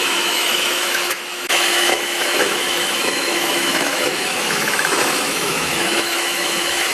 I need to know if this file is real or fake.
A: fake